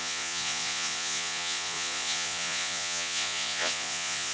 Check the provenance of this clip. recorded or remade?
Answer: remade